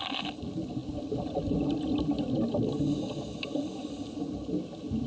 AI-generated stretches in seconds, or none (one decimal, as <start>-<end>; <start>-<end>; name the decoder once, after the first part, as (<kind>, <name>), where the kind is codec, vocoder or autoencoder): none